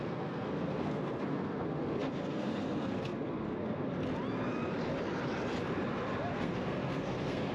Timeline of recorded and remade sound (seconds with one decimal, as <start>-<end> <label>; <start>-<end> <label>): 0.0-3.9 remade; 3.9-6.3 recorded; 6.3-7.5 remade